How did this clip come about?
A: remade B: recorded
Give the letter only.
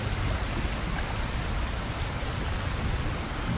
B